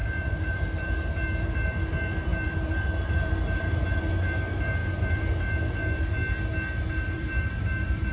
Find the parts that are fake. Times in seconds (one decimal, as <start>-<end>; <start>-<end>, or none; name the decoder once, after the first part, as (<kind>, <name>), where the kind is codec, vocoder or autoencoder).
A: 0.0-6.2 (vocoder, BigVGAN v2); 6.8-8.1